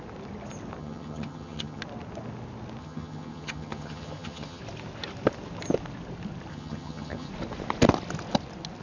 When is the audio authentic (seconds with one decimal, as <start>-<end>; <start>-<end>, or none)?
0.0-0.8; 1.8-2.8; 4.6-6.5; 7.3-8.8